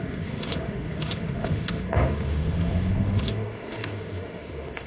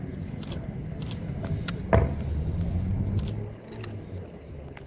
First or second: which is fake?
first